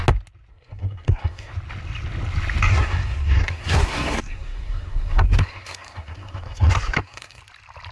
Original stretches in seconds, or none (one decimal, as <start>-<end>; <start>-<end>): 0.0-0.5; 1.5-2.7; 7.4-7.9